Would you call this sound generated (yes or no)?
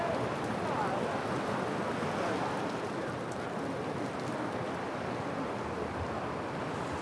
no